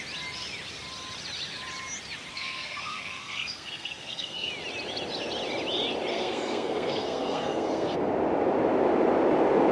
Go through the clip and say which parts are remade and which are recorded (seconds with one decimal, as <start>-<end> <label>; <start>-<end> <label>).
0.0-2.3 recorded; 2.3-4.5 remade; 4.5-6.1 recorded; 6.1-8.1 remade; 8.1-9.7 recorded